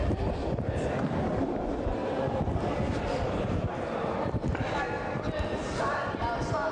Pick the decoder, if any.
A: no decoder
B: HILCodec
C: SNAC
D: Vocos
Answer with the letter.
A